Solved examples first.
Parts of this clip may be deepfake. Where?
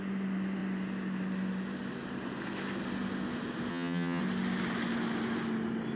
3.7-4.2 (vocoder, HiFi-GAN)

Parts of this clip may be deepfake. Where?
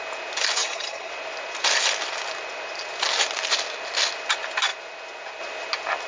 0.6-1.1 (vocoder, HiFi-GAN)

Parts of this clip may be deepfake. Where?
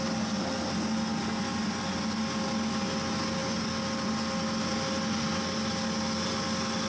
none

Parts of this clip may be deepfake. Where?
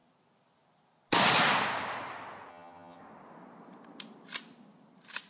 2.5-3.0 (vocoder, HiFi-GAN)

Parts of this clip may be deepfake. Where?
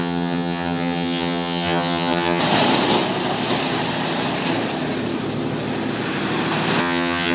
0.0-2.4 (vocoder, HiFi-GAN); 6.8-7.3